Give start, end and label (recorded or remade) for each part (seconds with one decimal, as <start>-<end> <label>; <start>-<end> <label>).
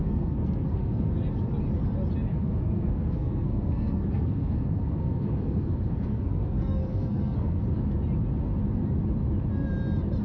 0.0-1.1 remade; 1.1-2.3 recorded; 2.3-7.6 remade; 7.6-10.2 recorded